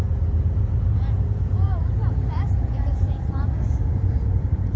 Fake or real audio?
fake